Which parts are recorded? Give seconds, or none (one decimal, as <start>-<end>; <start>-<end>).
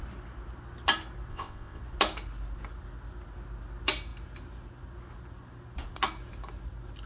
0.0-1.3; 1.8-7.1